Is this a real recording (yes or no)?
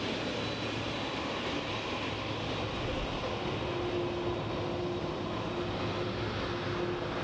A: yes